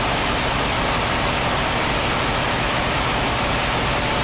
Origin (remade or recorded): recorded